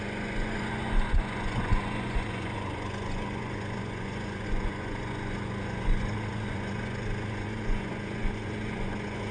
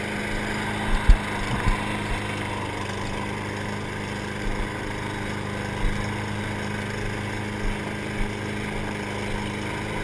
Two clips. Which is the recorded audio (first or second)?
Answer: second